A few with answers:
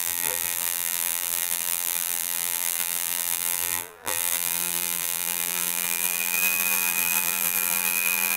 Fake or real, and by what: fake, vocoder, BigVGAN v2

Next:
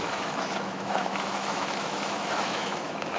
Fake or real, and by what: fake, autoencoder, DAC-VAE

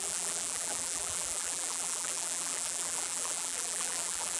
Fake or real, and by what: fake, vocoder, BigVGAN v2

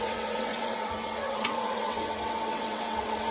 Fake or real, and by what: fake, vocoder, WaveNeXt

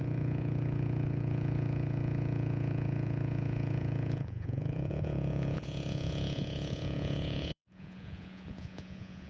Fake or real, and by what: fake, vocoder, Vocos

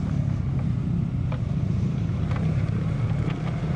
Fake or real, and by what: real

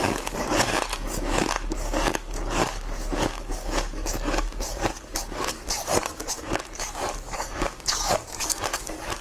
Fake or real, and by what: fake, codec, DAC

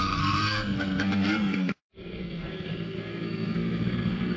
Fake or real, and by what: fake, codec, SNAC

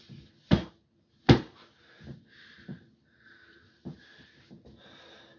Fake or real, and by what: real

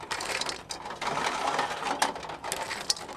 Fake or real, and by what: real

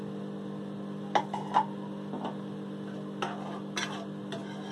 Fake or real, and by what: real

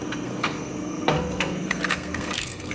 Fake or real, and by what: fake, codec, SNAC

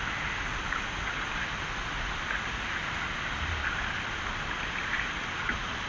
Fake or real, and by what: real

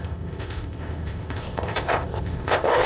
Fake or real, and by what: fake, codec, ZipCodec